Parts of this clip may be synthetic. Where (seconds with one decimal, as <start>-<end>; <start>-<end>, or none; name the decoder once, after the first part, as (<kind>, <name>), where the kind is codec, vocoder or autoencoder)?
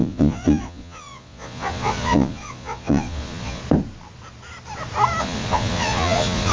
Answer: 0.0-3.6 (vocoder, Vocos); 5.2-6.5